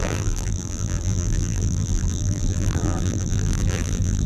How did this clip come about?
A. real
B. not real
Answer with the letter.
B